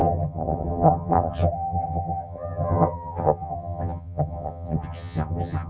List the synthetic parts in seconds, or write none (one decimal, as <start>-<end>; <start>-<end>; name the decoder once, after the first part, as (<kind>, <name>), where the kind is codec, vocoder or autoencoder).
0.0-5.7 (vocoder, HiFi-GAN)